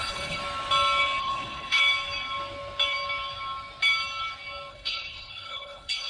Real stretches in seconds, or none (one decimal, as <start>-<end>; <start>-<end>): 0.4-1.2; 1.8-4.7